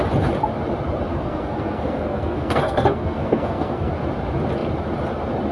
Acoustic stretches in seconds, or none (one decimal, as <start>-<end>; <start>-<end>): 0.0-1.1; 3.9-5.5